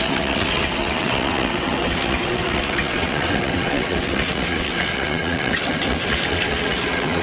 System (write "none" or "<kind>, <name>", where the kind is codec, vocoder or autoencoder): vocoder, WaveNeXt